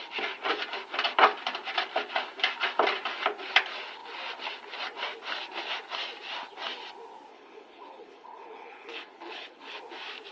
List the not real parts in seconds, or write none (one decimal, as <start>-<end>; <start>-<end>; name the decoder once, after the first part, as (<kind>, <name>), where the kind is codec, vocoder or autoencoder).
7.3-9.8 (codec, HILCodec)